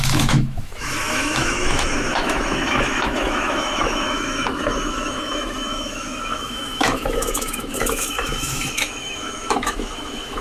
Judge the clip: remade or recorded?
remade